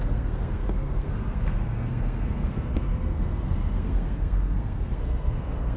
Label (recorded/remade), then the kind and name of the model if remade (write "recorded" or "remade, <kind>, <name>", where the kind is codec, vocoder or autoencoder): remade, codec, SNAC